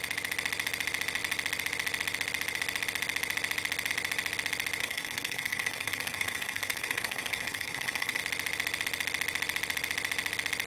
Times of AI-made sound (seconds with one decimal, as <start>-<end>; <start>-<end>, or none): 4.8-8.2